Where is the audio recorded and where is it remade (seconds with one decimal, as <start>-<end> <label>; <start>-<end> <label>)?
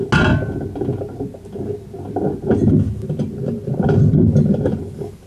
0.0-5.3 recorded